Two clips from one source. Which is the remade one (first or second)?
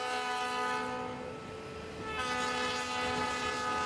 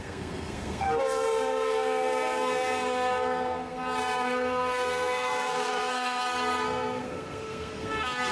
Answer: second